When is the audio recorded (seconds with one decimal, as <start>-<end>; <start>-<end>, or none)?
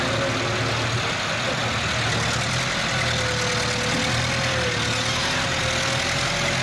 0.0-6.6